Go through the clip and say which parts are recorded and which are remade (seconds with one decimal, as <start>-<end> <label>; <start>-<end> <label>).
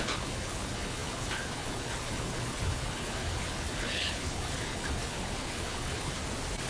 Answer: 0.0-6.2 remade; 6.2-6.7 recorded